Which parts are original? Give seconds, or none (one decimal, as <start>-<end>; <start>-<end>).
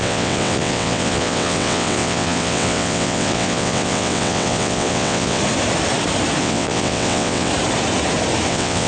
5.4-6.4; 7.5-8.5